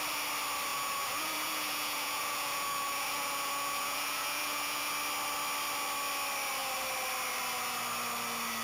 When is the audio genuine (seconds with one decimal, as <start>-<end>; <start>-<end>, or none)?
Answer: 0.0-0.7; 4.9-8.6